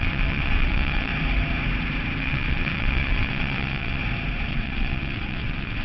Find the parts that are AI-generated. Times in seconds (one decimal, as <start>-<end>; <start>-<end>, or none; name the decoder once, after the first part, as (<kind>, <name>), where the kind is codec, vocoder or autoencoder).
0.0-1.1 (vocoder, WaveNeXt); 2.2-4.0; 4.5-5.8